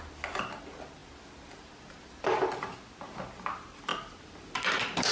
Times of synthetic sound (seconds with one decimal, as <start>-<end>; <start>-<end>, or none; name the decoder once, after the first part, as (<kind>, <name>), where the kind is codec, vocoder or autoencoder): none